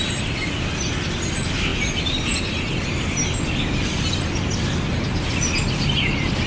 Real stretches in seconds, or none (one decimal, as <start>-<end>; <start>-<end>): 0.0-1.7; 2.4-6.5